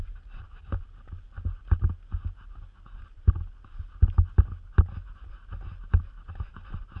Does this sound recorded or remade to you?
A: recorded